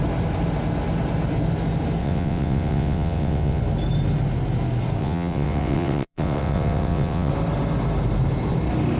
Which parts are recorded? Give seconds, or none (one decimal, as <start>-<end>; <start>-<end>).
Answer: 0.0-2.0; 3.6-5.0; 7.3-9.0